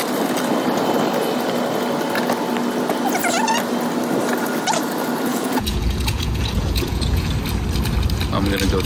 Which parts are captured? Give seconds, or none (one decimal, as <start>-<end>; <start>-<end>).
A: 0.0-5.3; 7.3-8.9